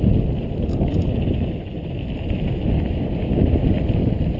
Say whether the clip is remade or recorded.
recorded